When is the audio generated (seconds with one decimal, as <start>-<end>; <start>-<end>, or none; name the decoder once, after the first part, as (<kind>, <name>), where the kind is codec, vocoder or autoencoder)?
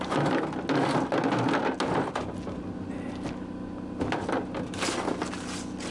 none